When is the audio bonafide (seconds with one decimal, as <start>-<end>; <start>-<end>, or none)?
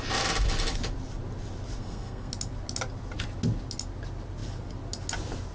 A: 0.0-1.8; 2.3-5.5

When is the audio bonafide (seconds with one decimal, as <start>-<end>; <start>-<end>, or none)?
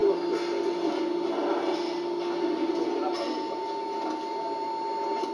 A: 0.0-5.3